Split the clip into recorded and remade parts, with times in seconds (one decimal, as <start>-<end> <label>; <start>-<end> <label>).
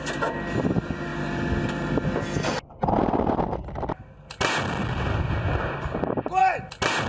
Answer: 0.0-7.1 recorded